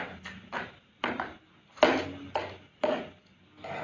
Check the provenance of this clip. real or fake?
real